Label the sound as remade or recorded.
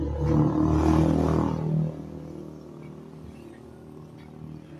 recorded